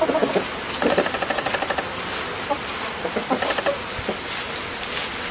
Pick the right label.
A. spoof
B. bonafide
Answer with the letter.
B